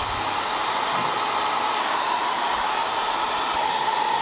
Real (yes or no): yes